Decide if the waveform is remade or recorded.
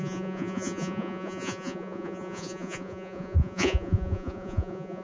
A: remade